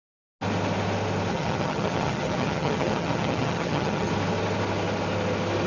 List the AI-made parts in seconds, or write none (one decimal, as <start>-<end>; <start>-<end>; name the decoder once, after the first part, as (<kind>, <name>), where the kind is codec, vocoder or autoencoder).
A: 1.3-4.1 (vocoder, HiFi-GAN)